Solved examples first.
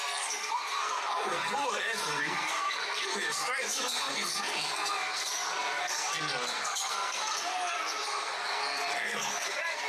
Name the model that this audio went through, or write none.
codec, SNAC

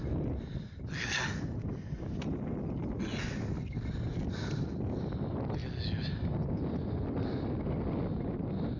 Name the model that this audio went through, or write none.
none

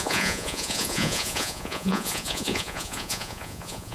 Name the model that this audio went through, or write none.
vocoder, Vocos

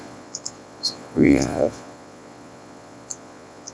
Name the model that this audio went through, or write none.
vocoder, Vocos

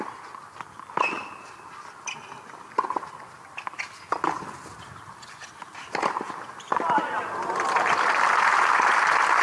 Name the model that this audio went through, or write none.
none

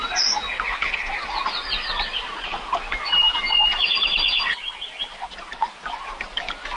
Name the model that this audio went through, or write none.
none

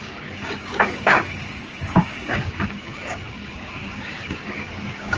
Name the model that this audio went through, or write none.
codec, DAC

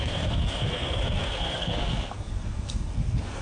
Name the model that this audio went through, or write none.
codec, SNAC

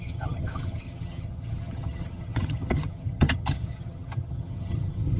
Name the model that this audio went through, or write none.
vocoder, HiFi-GAN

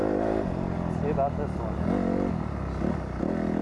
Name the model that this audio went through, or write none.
none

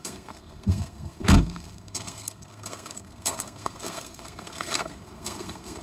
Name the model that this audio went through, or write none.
codec, SNAC